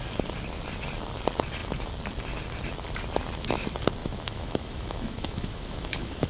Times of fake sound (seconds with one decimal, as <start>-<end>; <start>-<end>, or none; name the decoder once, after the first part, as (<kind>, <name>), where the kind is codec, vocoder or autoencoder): 4.0-6.3 (autoencoder, DAC-VAE)